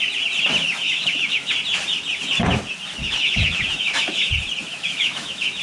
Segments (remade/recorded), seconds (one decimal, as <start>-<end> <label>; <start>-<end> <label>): 0.0-0.8 recorded; 0.8-1.5 remade; 1.5-3.0 recorded; 3.0-4.3 remade; 4.3-4.7 recorded; 4.7-5.6 remade